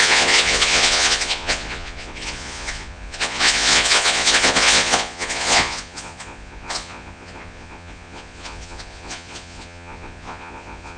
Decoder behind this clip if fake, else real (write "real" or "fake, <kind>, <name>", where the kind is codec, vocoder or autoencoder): fake, vocoder, Vocos